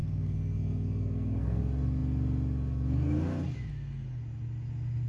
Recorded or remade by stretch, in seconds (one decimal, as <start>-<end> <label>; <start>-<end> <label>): 0.0-1.6 remade; 1.6-5.1 recorded